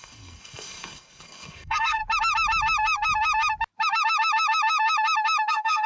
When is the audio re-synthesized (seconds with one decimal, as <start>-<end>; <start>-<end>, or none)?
0.0-2.0; 5.5-5.9